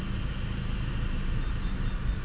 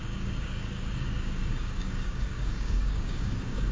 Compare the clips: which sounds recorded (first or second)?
first